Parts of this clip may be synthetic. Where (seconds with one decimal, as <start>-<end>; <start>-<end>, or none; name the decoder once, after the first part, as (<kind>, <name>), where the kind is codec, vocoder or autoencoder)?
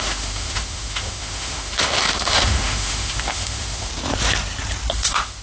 0.0-3.9 (autoencoder, DAC-VAE); 4.9-5.4